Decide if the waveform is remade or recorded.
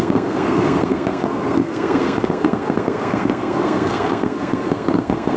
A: remade